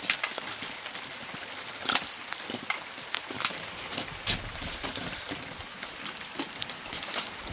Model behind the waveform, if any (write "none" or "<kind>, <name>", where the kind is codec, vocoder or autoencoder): none